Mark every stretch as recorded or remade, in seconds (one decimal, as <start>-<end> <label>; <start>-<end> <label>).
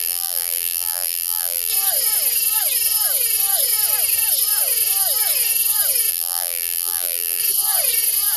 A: 0.0-1.7 remade; 1.7-6.1 recorded; 6.1-7.4 remade; 7.4-8.4 recorded